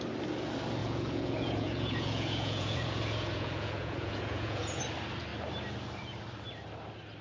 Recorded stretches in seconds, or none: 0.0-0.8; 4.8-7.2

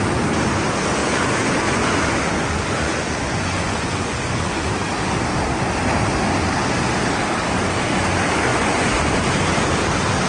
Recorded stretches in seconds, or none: 0.0-1.0; 4.7-8.5; 9.3-10.3

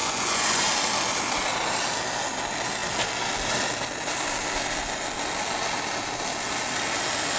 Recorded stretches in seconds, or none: 0.7-7.4

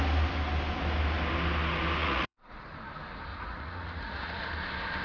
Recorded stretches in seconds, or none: 0.0-2.0; 2.6-3.3; 4.5-5.0

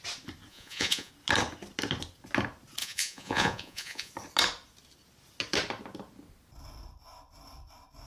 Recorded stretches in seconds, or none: 0.0-0.5; 1.1-2.8; 4.1-8.1

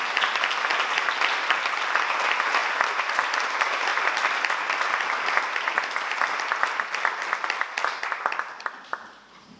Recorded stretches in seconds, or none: 0.0-9.6

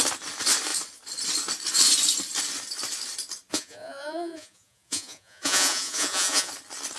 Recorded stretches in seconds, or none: 0.0-3.5; 6.5-7.0